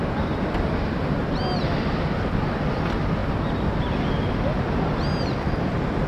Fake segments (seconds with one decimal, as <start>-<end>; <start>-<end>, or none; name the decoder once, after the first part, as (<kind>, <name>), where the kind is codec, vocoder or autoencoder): none